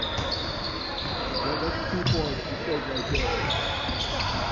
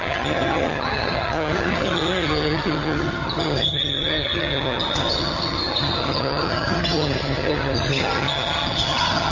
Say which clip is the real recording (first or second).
first